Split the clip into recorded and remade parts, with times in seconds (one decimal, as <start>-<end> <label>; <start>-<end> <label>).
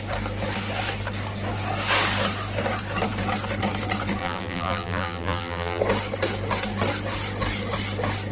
0.0-4.2 recorded; 4.2-5.8 remade; 5.8-8.3 recorded